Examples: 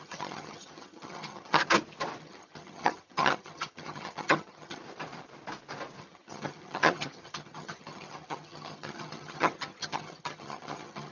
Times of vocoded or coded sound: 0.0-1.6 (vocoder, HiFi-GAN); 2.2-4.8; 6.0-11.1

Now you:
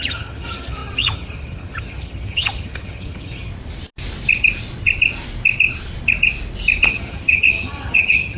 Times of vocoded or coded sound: 0.0-3.5 (vocoder, HiFi-GAN); 6.9-8.4

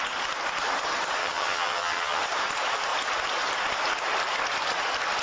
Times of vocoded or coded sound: 1.2-2.2 (vocoder, HiFi-GAN)

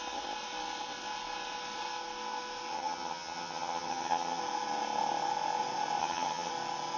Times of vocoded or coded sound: 2.7-4.4 (vocoder, HiFi-GAN); 6.0-6.5

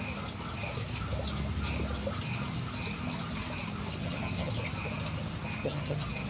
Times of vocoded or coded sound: 4.0-4.5 (vocoder, HiFi-GAN); 5.6-6.3